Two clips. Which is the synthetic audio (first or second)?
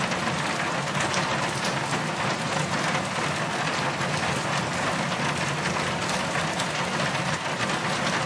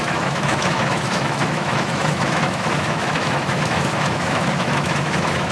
second